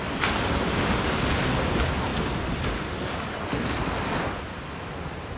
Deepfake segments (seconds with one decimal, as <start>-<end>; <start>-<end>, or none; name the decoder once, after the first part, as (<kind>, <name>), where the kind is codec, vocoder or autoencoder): none